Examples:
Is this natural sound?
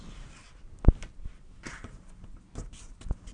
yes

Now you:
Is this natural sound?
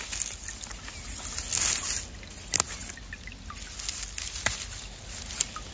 yes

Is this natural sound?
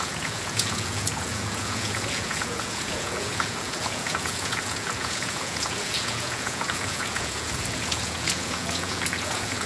no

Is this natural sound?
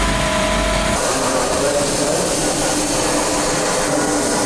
yes